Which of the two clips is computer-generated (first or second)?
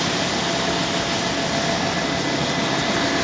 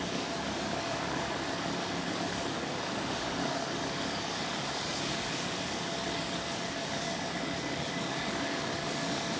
second